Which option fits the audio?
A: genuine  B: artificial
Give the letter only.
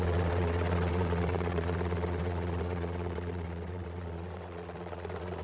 B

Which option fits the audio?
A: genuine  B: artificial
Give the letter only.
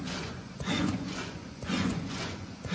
B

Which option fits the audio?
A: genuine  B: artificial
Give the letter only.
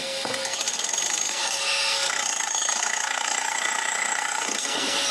B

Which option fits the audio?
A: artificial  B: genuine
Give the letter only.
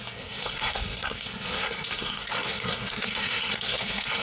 A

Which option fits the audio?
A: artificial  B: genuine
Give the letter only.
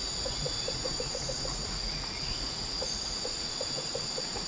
A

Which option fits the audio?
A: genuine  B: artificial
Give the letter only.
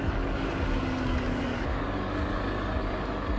B